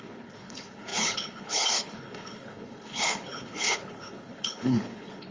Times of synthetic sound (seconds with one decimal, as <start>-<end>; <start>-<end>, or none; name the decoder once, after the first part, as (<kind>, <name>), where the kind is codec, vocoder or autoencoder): 0.0-5.3 (codec, HILCodec)